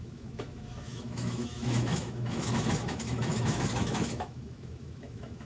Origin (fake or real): fake